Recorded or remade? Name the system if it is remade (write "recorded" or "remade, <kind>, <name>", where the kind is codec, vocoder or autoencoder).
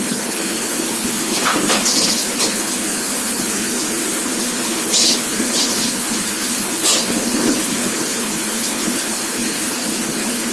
remade, codec, HILCodec